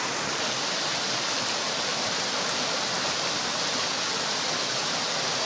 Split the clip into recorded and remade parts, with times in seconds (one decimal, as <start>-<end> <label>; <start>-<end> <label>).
0.0-5.4 recorded